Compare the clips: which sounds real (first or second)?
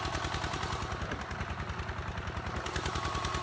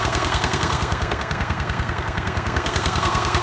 first